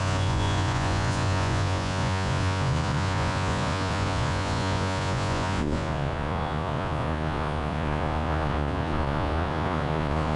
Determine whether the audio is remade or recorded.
remade